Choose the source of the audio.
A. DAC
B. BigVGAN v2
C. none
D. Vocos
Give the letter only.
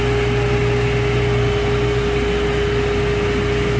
C